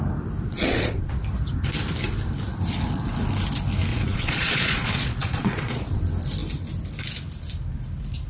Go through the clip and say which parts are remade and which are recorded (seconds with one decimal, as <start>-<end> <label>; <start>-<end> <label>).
0.0-0.5 recorded; 0.5-1.2 remade; 1.2-3.9 recorded; 3.9-6.0 remade; 6.0-8.3 recorded